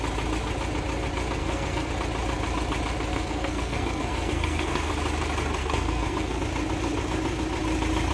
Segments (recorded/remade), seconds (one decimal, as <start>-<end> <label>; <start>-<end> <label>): 0.0-1.4 recorded; 1.4-1.9 remade; 1.9-3.1 recorded; 3.1-4.9 remade; 4.9-5.6 recorded; 5.6-6.4 remade; 6.4-8.1 recorded

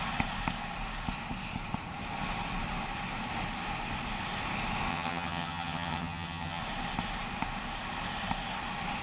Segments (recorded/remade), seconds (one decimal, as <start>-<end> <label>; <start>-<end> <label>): 0.0-4.9 recorded; 4.9-6.6 remade; 6.6-9.0 recorded

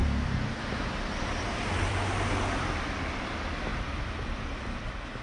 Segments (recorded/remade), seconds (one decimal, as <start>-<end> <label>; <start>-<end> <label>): 0.0-2.3 remade; 2.3-3.7 recorded; 3.7-4.6 remade; 4.6-5.2 recorded

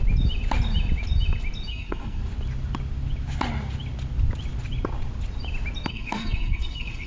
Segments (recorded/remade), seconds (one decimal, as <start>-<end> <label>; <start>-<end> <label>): 0.0-1.7 recorded; 1.7-2.2 remade; 2.2-5.9 recorded; 5.9-7.1 remade

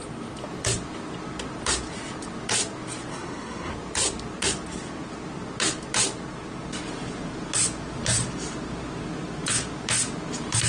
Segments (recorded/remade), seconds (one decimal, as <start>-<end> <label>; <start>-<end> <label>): 0.0-3.1 recorded; 3.1-3.7 remade; 3.7-10.7 recorded

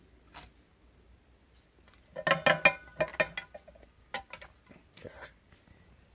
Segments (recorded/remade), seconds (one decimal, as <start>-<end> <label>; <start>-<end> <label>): 0.0-6.1 recorded